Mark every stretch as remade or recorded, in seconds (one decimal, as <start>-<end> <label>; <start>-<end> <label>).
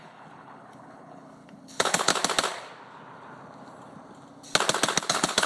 0.0-2.1 remade; 2.1-5.1 recorded; 5.1-5.5 remade